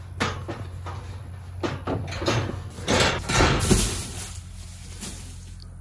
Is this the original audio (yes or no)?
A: yes